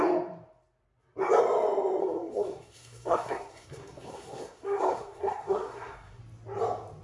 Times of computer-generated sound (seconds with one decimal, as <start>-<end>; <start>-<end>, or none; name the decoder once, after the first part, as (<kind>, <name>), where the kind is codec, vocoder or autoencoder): 2.0-6.2 (codec, SNAC)